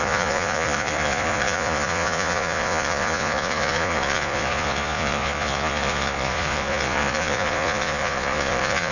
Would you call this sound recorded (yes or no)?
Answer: no